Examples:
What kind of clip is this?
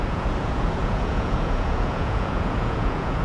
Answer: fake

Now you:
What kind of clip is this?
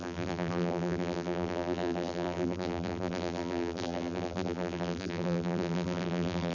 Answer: fake